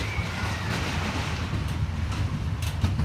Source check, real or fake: real